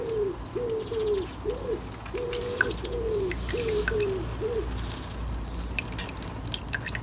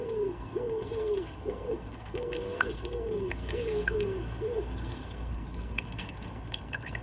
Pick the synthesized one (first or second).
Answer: second